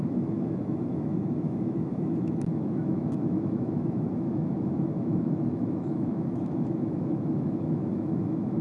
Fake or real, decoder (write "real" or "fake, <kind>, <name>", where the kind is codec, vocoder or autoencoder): fake, autoencoder, DAC-VAE